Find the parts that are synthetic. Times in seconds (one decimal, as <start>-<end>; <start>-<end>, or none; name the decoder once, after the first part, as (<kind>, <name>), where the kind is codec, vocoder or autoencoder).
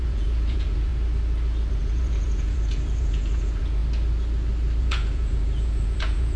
0.0-0.9 (vocoder, Vocos); 1.7-3.8; 4.8-6.4